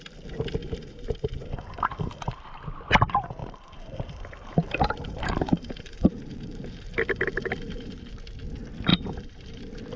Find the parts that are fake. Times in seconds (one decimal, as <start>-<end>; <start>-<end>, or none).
0.6-2.6; 3.4-8.1; 8.9-9.6